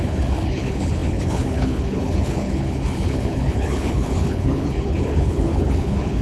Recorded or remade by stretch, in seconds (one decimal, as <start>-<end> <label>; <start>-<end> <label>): 0.0-6.2 remade